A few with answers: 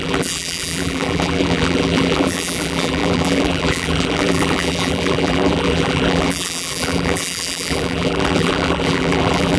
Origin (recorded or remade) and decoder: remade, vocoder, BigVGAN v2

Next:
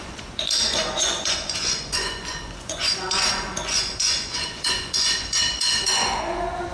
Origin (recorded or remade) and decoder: remade, vocoder, Vocos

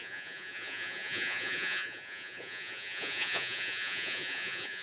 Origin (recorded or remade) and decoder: remade, vocoder, Vocos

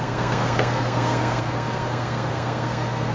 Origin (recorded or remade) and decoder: remade, codec, SNAC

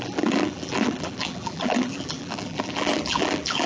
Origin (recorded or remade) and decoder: remade, vocoder, BigVGAN v2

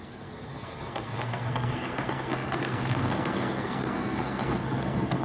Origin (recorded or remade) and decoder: remade, codec, SNAC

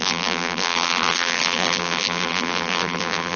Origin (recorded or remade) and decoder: remade, vocoder, BigVGAN v2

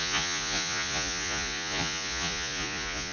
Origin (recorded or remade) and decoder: remade, vocoder, Vocos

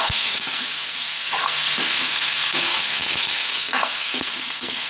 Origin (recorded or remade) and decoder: remade, codec, SNAC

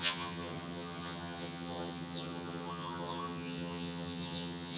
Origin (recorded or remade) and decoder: remade, vocoder, HiFi-GAN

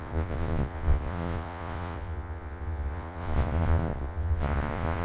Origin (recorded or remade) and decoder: remade, vocoder, Vocos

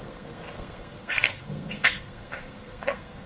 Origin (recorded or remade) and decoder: remade, codec, SNAC